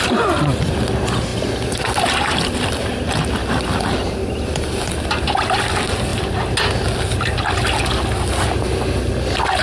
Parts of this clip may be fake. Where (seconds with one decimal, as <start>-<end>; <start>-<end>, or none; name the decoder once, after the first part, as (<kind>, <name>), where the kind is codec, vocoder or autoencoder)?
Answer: none

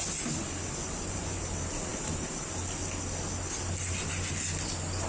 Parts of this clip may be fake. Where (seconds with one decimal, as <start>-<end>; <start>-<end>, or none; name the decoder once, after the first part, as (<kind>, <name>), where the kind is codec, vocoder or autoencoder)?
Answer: 0.8-1.4 (vocoder, Vocos)

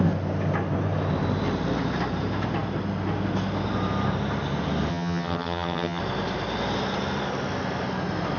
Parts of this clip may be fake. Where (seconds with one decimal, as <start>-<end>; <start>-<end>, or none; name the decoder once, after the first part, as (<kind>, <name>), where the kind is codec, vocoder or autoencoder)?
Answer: 4.9-6.0 (vocoder, HiFi-GAN)